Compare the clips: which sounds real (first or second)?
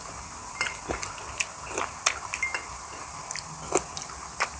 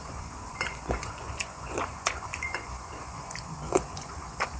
first